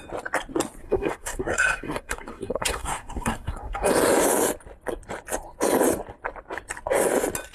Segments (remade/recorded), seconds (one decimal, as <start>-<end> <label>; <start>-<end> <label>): 0.0-0.8 recorded; 0.8-3.9 remade; 3.9-7.5 recorded